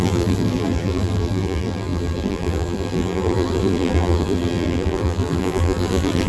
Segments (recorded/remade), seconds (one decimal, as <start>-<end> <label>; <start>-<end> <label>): 0.0-6.3 remade